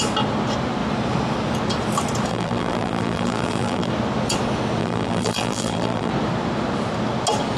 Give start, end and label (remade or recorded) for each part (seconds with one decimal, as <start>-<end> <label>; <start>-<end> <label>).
0.0-2.3 recorded; 2.3-3.9 remade; 3.9-4.8 recorded; 4.8-6.1 remade; 6.1-7.6 recorded